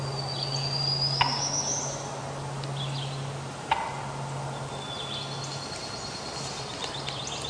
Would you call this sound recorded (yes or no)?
yes